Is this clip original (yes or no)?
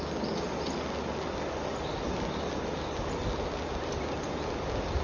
yes